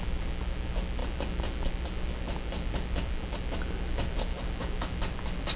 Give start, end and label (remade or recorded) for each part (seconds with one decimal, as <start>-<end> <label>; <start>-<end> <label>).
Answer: 0.0-5.6 recorded